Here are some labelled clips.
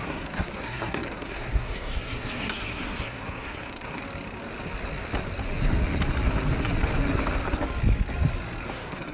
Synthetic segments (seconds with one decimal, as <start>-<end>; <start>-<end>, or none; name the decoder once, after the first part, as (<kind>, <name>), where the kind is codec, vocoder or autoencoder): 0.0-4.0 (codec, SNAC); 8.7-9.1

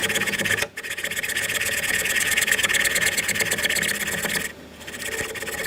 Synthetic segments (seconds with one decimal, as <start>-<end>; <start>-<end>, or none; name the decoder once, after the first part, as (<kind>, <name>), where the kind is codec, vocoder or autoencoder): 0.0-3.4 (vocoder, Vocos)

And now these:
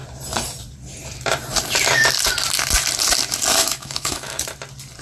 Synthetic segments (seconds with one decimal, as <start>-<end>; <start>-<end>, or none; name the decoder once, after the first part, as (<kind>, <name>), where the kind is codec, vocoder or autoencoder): 3.6-4.4 (autoencoder, DAC-VAE)

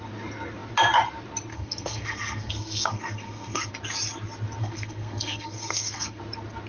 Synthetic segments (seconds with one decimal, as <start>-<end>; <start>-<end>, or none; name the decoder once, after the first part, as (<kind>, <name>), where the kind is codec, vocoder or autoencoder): 1.5-3.7 (codec, SNAC); 4.6-6.2